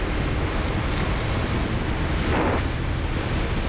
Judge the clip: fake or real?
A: real